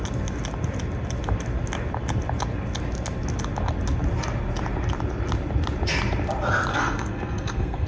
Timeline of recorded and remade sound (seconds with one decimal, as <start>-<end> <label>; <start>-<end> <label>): 0.0-6.7 recorded; 6.7-7.9 remade